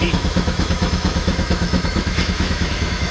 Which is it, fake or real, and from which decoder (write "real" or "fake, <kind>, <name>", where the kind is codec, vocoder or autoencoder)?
fake, autoencoder, DAC-VAE